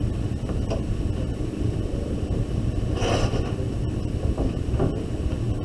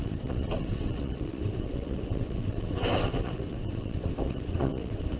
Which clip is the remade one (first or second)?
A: second